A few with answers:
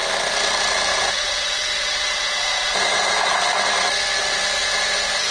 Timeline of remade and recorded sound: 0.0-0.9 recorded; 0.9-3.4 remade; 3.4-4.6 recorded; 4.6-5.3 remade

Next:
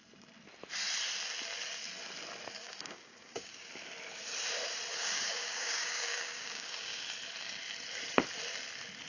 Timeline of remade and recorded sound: 0.0-2.6 recorded; 2.6-3.7 remade; 3.7-4.9 recorded; 4.9-7.0 remade; 7.0-9.1 recorded

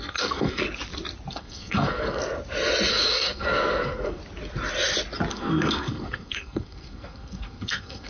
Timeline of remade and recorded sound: 0.0-0.6 remade; 0.6-1.3 recorded; 1.3-2.2 remade; 2.2-2.9 recorded; 2.9-4.2 remade; 4.2-5.3 recorded; 5.3-8.1 remade

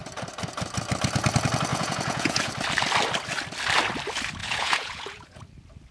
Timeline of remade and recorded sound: 0.0-1.7 recorded; 1.7-2.5 remade; 2.5-4.4 recorded; 4.4-5.4 remade; 5.4-5.9 recorded

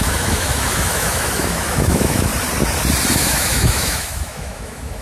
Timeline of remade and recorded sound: 0.0-2.3 remade; 2.3-3.1 recorded; 3.1-5.0 remade

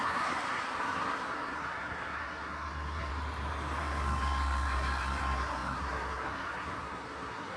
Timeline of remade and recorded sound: 0.0-3.1 remade; 3.1-3.8 recorded; 3.8-7.6 remade

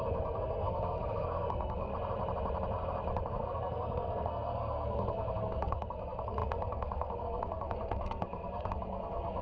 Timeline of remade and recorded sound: 0.0-1.9 remade; 1.9-3.3 recorded; 3.3-9.4 remade

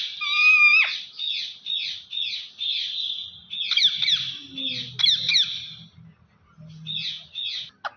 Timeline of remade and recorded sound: 0.0-8.0 recorded